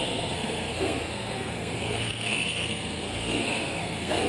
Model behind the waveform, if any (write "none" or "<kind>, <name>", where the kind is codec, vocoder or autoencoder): codec, SNAC